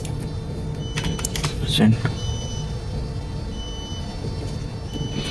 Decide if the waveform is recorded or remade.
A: recorded